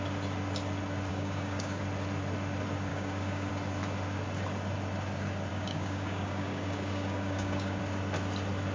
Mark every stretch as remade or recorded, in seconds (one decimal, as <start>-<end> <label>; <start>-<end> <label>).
0.0-1.1 recorded; 1.1-1.8 remade; 1.8-2.9 recorded; 2.9-3.5 remade; 3.5-5.5 recorded; 5.5-7.8 remade; 7.8-8.7 recorded